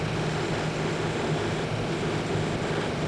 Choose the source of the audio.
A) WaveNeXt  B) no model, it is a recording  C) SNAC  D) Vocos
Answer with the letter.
B